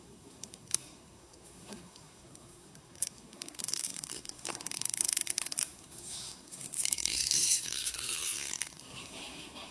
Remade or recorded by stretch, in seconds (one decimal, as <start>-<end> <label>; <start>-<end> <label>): 0.0-9.7 remade